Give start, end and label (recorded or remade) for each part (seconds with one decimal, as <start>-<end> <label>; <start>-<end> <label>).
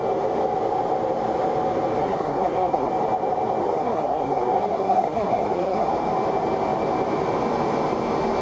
0.0-2.0 recorded; 2.0-2.9 remade; 2.9-3.6 recorded; 3.6-6.0 remade; 6.0-8.4 recorded